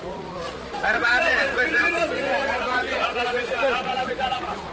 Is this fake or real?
fake